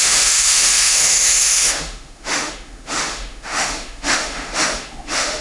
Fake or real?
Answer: fake